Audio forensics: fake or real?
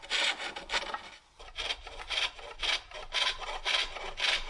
real